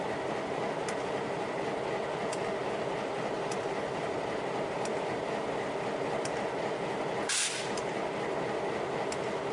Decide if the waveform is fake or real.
real